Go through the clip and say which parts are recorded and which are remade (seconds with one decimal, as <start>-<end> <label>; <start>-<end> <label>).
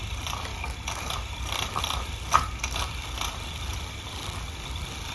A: 0.0-5.1 recorded